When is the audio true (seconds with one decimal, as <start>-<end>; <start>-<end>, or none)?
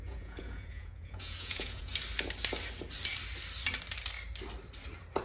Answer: 1.9-5.2